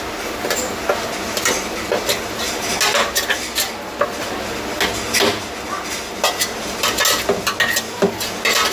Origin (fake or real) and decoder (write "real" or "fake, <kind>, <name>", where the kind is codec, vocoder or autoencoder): real